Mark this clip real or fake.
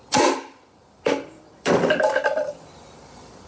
real